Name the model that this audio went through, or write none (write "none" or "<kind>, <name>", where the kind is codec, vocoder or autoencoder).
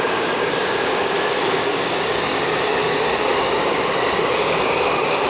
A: codec, DAC